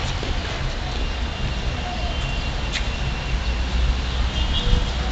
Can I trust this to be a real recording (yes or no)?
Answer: yes